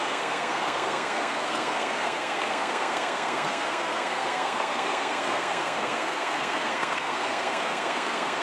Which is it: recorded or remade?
remade